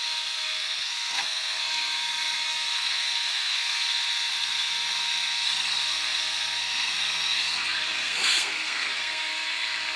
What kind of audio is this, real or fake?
fake